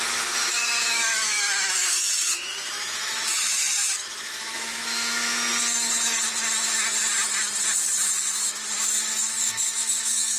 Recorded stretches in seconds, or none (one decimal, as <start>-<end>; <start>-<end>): 5.5-8.2; 8.6-9.2